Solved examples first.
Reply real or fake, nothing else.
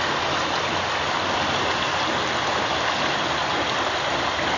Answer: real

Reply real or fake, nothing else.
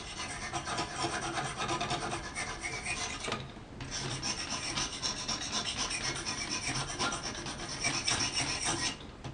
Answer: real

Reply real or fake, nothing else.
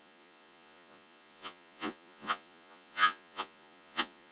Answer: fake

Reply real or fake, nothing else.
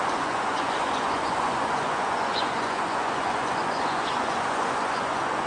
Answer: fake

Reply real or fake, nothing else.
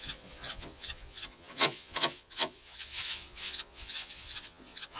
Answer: fake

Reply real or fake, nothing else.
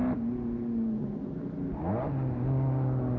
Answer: real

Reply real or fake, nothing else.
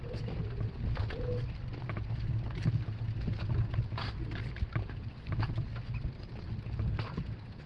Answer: real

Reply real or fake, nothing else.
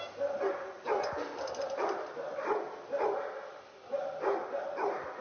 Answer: real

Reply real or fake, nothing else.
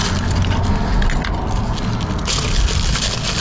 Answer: real